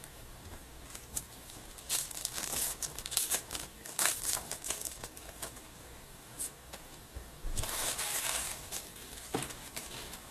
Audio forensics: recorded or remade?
remade